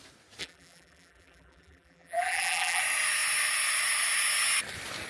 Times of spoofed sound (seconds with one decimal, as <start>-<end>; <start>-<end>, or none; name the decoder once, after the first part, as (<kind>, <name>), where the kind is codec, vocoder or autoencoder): 0.4-2.8 (vocoder, BigVGAN v2)